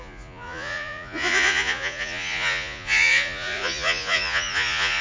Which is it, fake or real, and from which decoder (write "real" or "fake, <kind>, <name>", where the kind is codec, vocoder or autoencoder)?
fake, vocoder, Vocos